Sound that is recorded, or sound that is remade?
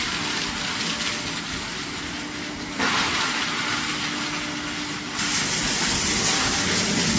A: recorded